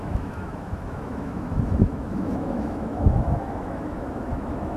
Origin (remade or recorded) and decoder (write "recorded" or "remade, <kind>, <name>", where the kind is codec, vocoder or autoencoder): remade, autoencoder, DAC-VAE